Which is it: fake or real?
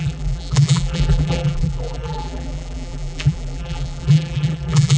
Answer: fake